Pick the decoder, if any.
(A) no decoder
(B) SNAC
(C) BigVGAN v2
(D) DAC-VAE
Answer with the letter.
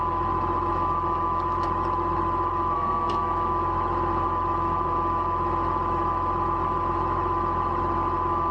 D